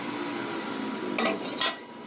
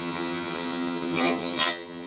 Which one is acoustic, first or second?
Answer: first